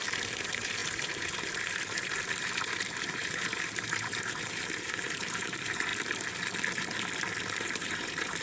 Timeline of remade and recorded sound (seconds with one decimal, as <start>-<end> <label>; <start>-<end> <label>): 0.0-5.9 remade; 5.9-7.6 recorded; 7.6-8.4 remade